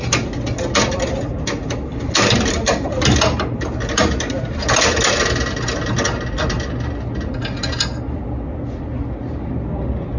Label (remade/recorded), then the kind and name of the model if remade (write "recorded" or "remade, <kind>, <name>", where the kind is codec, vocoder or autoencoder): recorded